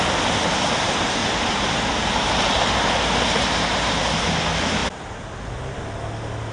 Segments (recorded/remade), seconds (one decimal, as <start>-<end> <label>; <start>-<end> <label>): 0.0-1.2 recorded; 1.2-4.3 remade; 4.3-6.5 recorded

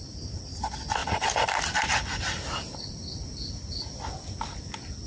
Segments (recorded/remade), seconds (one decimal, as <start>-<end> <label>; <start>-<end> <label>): 0.0-1.0 recorded; 1.0-4.1 remade; 4.1-5.1 recorded

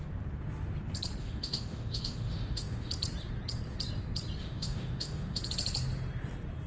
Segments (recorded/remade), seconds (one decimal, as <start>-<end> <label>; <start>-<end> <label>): 0.0-1.2 recorded; 1.2-2.9 remade; 2.9-4.4 recorded; 4.4-5.4 remade; 5.4-6.7 recorded

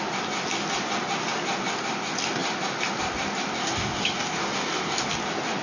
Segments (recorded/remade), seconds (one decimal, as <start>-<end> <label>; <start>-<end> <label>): 0.0-3.6 recorded; 3.6-5.1 remade; 5.1-5.6 recorded

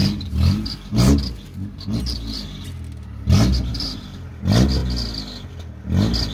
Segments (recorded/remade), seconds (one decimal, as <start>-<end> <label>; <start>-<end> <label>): 0.0-2.0 remade; 2.0-3.7 recorded; 3.7-4.3 remade; 4.3-6.3 recorded

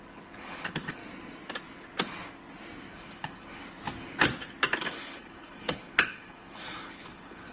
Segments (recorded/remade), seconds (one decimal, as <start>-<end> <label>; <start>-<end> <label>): 0.0-1.0 remade; 1.0-2.9 recorded; 2.9-3.6 remade; 3.6-4.8 recorded; 4.8-7.5 remade

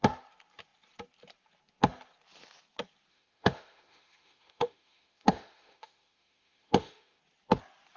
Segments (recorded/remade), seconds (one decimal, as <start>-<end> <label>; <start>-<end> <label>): 0.0-3.1 recorded; 3.1-7.2 remade; 7.2-8.0 recorded

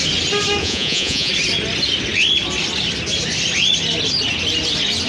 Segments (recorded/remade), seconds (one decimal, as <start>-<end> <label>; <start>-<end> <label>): 0.0-0.6 recorded; 0.6-1.3 remade; 1.3-5.1 recorded